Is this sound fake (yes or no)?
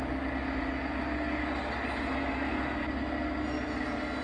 no